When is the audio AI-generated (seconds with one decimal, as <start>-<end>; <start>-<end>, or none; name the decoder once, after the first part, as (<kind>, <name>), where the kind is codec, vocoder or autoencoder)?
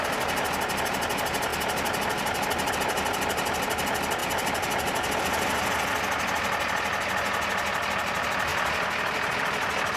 4.2-5.2 (vocoder, BigVGAN v2); 8.5-9.4